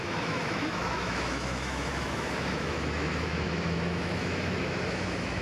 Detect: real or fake fake